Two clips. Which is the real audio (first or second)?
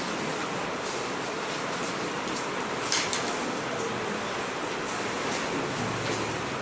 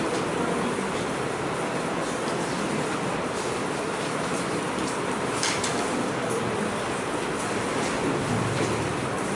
first